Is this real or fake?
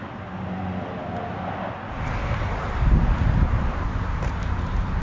real